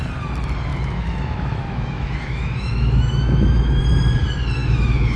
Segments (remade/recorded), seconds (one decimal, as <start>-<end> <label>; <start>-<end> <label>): 0.0-0.7 recorded; 0.7-3.8 remade; 3.8-4.6 recorded; 4.6-5.2 remade